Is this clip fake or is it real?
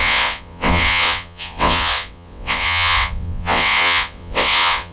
fake